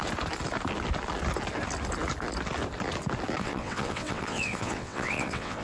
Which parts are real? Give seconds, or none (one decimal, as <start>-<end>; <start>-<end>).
0.0-3.4